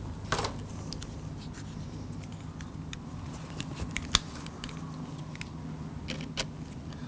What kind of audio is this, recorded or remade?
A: recorded